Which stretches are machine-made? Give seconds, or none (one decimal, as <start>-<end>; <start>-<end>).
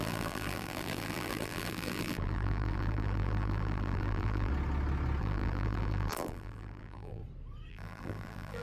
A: 0.0-4.5; 5.2-7.2; 7.7-8.6